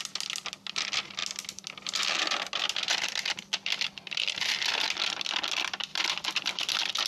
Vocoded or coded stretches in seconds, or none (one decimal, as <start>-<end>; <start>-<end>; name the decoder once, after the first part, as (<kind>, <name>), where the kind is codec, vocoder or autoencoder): 5.9-6.6 (vocoder, BigVGAN v2)